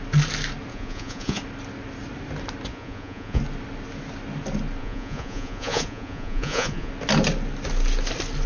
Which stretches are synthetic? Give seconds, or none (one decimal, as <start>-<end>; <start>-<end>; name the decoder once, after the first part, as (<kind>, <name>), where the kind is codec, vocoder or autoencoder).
0.7-1.4 (vocoder, Vocos); 2.7-3.4; 4.8-6.9

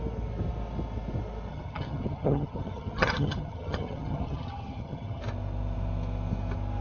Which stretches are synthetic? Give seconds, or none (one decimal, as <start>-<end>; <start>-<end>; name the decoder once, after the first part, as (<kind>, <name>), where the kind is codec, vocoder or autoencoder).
1.5-5.2 (vocoder, HiFi-GAN)

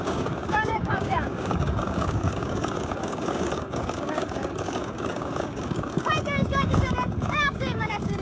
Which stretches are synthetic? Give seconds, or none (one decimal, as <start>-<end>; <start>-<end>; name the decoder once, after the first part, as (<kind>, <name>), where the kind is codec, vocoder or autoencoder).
0.0-8.2 (codec, DAC)

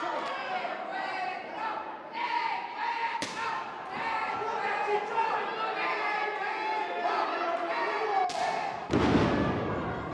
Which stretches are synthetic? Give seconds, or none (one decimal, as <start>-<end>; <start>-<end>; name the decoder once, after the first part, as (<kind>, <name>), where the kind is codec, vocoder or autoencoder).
0.9-3.5 (vocoder, BigVGAN v2)

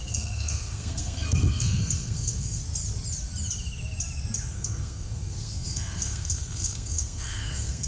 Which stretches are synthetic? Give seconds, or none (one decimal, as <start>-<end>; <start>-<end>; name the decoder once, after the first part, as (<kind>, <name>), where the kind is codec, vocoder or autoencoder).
0.0-2.6 (codec, SNAC); 4.5-7.9

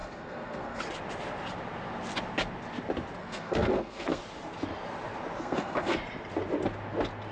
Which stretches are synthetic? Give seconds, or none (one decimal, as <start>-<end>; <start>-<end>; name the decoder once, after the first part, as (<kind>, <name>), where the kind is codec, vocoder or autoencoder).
0.0-0.8 (codec, SNAC); 3.2-4.2; 5.4-6.0

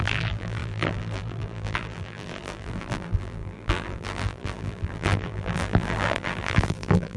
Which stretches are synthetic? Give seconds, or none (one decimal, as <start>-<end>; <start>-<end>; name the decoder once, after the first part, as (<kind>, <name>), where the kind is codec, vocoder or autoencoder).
0.0-7.2 (vocoder, BigVGAN v2)

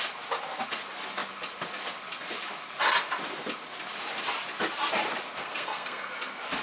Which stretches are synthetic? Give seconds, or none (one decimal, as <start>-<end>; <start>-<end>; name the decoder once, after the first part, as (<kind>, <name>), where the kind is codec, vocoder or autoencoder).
5.4-6.1 (codec, SNAC)